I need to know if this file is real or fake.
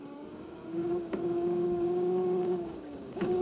fake